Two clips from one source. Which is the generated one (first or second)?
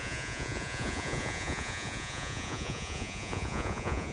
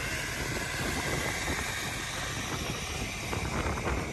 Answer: first